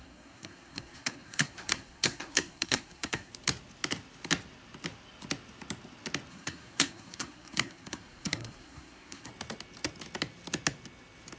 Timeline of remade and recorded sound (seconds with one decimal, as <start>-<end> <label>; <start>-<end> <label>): 0.0-3.3 remade; 3.3-6.3 recorded; 6.3-9.3 remade; 9.3-11.4 recorded

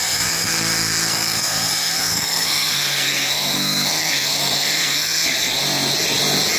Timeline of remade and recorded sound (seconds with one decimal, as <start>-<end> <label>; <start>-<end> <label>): 0.0-5.5 remade; 5.5-6.6 recorded

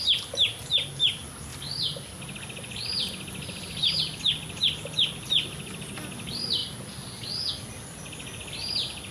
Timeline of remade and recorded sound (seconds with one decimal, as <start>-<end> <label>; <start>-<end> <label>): 0.0-9.1 recorded